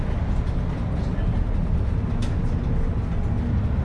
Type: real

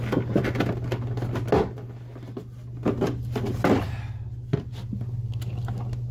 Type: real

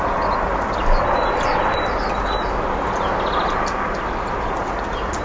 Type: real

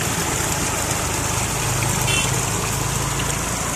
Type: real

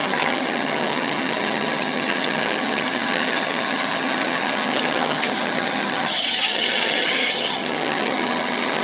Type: fake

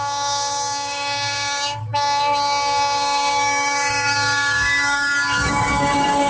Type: fake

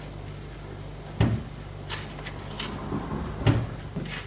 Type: real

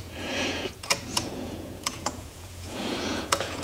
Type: fake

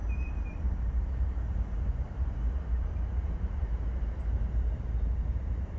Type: fake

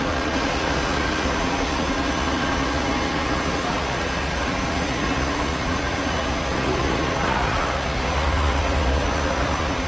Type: fake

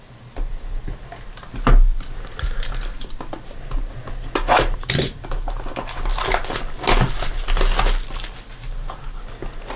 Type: real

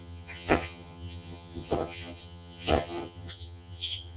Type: fake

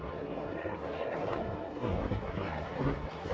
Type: fake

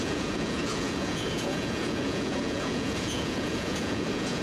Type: fake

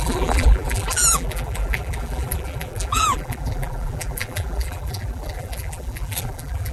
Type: fake